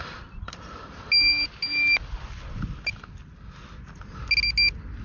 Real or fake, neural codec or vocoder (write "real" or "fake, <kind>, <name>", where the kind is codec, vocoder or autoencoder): real